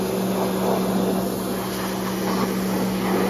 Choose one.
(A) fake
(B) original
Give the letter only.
B